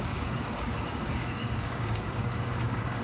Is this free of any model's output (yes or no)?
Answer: no